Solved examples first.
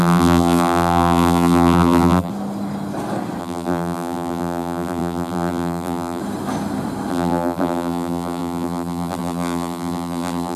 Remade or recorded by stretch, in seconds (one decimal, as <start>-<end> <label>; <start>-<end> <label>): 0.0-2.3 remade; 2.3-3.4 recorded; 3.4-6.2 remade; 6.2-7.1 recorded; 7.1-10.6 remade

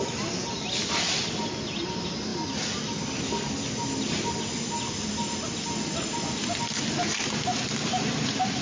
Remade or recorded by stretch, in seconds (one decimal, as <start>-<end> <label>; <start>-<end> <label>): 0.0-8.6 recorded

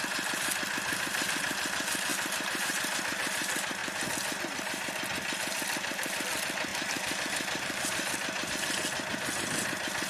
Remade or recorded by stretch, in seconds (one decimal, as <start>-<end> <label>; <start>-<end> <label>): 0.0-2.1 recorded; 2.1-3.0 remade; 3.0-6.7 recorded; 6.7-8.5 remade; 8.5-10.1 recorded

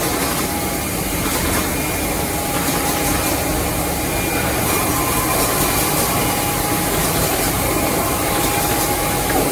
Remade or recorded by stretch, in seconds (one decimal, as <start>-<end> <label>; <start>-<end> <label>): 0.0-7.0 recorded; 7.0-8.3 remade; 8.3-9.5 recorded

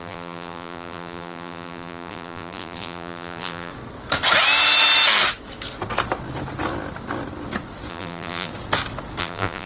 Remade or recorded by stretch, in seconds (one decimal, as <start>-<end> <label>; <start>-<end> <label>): 0.0-3.7 remade; 3.7-7.9 recorded; 7.9-8.5 remade; 8.5-9.2 recorded; 9.2-9.7 remade

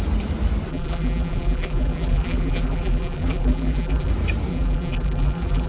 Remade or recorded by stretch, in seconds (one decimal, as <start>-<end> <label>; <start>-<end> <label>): 0.0-0.7 recorded; 0.7-4.1 remade; 4.1-4.5 recorded; 4.5-5.7 remade